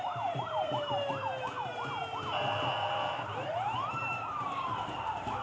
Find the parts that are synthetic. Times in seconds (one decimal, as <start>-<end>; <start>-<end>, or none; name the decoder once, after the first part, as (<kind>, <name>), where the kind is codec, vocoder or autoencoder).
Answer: 0.0-5.4 (vocoder, BigVGAN v2)